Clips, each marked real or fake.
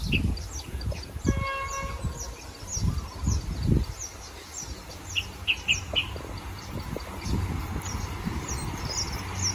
real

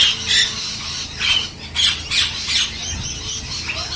real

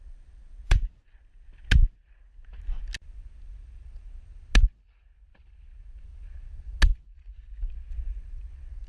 real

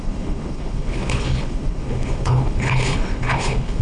fake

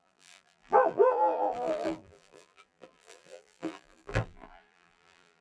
fake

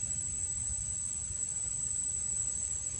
real